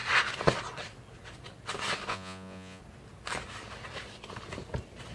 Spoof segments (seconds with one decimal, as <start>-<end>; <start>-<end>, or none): 2.1-2.8